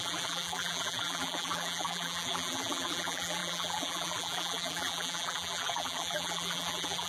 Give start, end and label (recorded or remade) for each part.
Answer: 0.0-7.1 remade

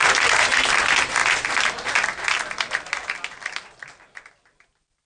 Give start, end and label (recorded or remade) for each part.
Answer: 0.0-5.1 recorded

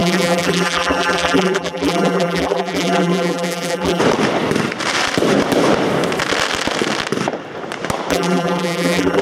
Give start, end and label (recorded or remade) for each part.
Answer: 0.0-4.0 remade; 4.0-8.1 recorded; 8.1-9.2 remade

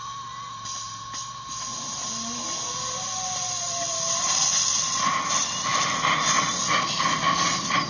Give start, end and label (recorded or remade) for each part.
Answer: 0.0-7.9 recorded

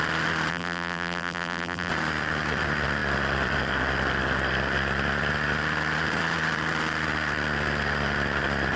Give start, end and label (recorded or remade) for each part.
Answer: 0.0-0.5 recorded; 0.5-1.9 remade; 1.9-8.8 recorded